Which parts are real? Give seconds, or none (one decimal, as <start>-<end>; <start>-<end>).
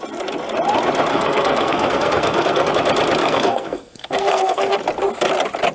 0.0-1.1; 2.7-3.2; 4.7-5.7